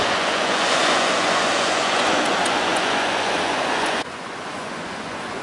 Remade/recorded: remade